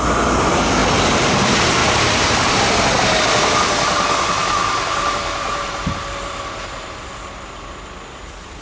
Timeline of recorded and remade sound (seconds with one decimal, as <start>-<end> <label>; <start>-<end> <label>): 0.0-0.8 recorded; 0.8-1.3 remade; 1.3-1.8 recorded; 1.8-3.2 remade; 3.2-4.6 recorded; 4.6-6.7 remade; 6.7-8.6 recorded